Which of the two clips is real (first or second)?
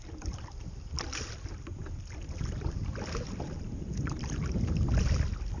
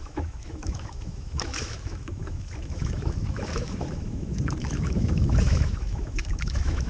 first